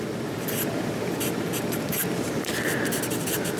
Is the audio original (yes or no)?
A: no